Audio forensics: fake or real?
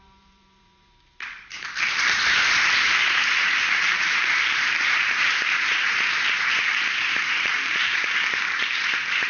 fake